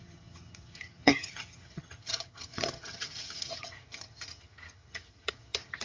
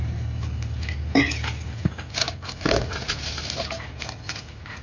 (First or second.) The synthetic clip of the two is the first